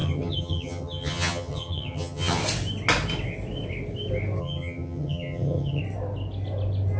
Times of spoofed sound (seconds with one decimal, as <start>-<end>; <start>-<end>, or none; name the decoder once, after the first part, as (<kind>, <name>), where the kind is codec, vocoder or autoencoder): 0.0-2.4 (vocoder, HiFi-GAN); 4.4-5.8